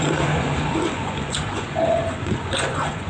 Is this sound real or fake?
fake